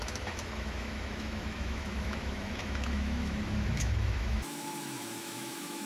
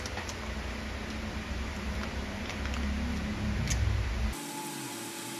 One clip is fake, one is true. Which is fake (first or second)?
first